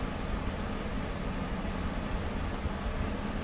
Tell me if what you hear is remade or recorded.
recorded